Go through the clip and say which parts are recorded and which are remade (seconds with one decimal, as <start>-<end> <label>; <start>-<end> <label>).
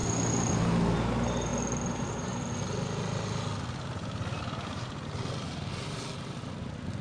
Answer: 0.0-7.0 recorded